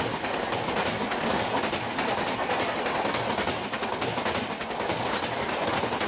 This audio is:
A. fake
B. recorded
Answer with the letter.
B